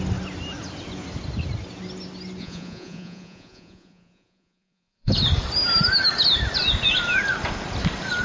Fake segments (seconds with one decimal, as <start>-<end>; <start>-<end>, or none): 2.4-5.1